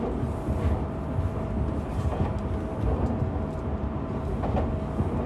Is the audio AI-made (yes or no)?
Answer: no